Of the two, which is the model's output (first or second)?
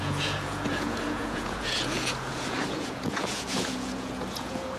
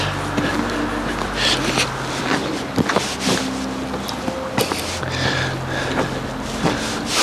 first